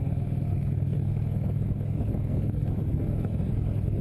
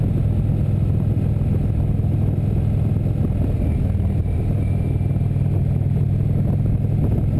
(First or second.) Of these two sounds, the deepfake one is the first